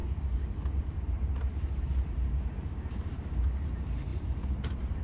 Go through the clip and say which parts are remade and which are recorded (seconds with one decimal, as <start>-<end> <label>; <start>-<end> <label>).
0.0-0.8 recorded; 0.8-5.0 remade

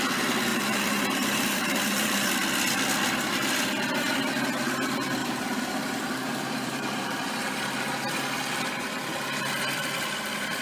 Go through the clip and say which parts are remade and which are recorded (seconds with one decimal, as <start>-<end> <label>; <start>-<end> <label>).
0.0-0.5 recorded; 0.5-2.3 remade; 2.3-5.2 recorded; 5.2-7.2 remade; 7.2-10.6 recorded

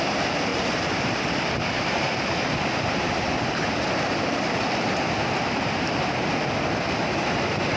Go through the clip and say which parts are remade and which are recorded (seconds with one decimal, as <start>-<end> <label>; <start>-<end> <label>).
0.0-0.5 recorded; 0.5-4.8 remade; 4.8-7.8 recorded

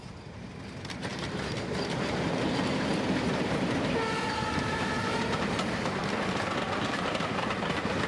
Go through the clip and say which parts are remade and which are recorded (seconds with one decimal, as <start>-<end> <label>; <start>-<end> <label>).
0.0-6.0 remade; 6.0-7.0 recorded; 7.0-8.1 remade

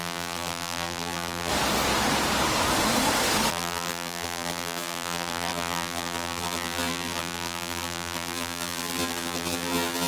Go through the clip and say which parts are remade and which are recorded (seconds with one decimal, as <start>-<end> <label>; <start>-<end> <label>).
0.0-1.5 remade; 1.5-3.5 recorded; 3.5-10.1 remade

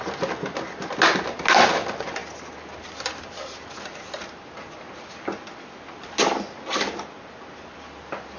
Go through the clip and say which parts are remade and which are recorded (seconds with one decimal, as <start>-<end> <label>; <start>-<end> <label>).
0.0-8.4 recorded

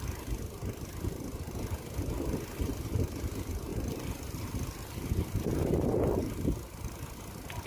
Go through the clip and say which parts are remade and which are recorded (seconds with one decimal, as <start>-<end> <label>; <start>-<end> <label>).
0.0-3.7 recorded; 3.7-4.4 remade; 4.4-7.7 recorded